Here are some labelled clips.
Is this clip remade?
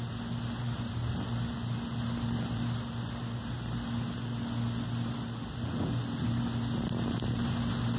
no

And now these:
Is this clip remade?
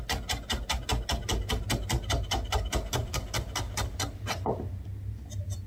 no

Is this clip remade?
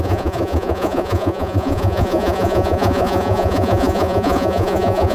yes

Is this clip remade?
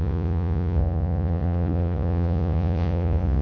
yes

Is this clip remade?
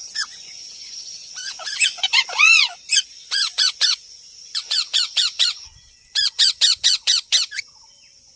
yes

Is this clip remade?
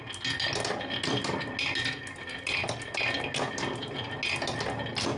no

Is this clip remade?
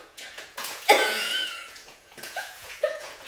yes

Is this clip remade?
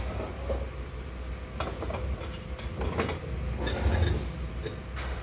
no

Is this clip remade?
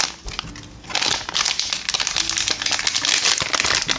no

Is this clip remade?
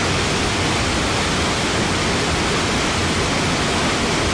no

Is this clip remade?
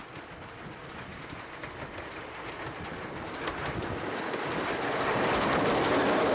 no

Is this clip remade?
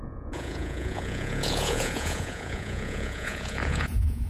yes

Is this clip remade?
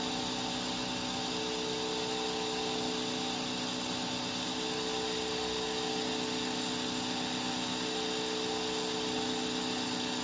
no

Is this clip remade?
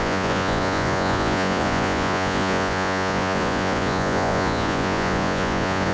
yes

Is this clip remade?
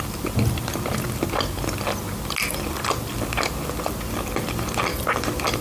no